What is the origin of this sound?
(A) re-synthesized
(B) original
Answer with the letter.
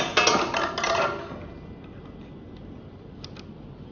B